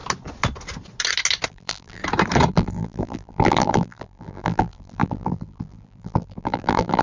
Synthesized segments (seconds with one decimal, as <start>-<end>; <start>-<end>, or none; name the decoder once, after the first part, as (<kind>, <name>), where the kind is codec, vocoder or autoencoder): 1.5-2.0 (vocoder, BigVGAN v2); 2.5-7.0